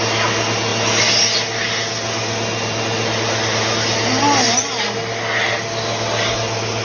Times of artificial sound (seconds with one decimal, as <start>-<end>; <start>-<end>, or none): none